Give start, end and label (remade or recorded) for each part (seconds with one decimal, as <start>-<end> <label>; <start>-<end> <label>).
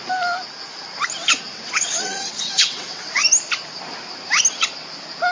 0.0-1.5 recorded; 1.5-3.2 remade; 3.2-5.3 recorded